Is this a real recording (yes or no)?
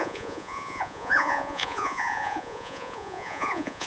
no